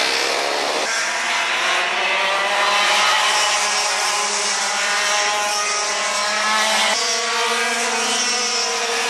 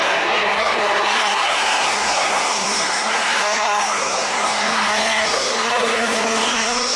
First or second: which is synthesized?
second